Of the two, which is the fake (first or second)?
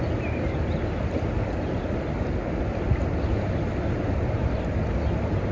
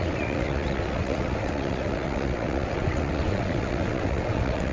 second